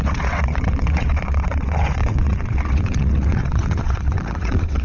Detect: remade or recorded remade